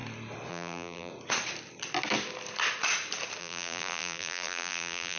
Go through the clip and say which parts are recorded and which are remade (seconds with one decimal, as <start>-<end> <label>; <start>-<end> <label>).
0.0-0.5 recorded; 0.5-1.1 remade; 1.1-3.4 recorded; 3.4-5.2 remade